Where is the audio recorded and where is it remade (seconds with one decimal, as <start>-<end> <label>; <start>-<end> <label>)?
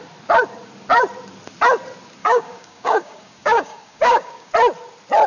0.0-2.2 recorded; 2.2-4.5 remade; 4.5-5.3 recorded